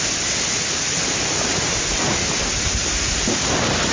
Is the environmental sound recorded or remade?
recorded